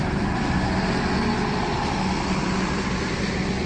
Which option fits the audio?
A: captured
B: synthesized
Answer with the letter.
A